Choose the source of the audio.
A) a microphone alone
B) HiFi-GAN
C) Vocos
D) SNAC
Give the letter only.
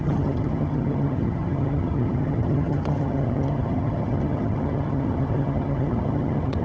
B